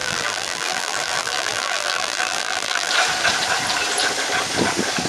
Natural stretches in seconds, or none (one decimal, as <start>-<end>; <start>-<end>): 2.9-5.1